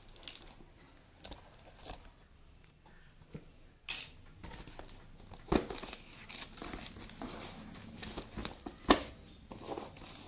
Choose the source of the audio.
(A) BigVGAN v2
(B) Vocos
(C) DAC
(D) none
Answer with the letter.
D